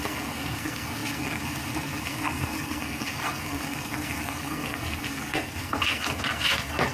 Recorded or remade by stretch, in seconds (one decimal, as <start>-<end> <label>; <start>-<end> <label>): 0.0-6.9 remade